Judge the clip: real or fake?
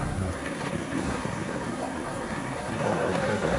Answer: fake